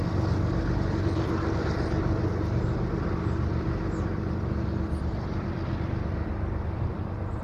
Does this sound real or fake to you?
real